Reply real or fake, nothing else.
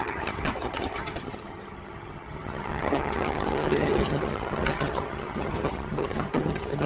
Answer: fake